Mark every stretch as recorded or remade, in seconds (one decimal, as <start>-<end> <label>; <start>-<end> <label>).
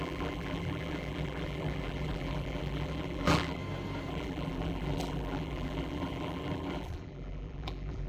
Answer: 0.0-3.6 remade; 3.6-4.1 recorded; 4.1-8.1 remade